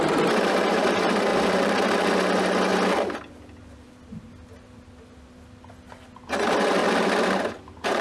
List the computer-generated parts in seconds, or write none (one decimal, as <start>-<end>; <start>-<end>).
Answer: 1.3-1.9; 6.8-8.0